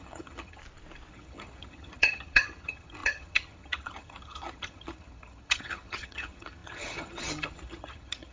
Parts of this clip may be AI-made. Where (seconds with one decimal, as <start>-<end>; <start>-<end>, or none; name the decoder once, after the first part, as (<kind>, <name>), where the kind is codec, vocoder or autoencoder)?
0.0-0.6 (vocoder, HiFi-GAN); 1.1-8.3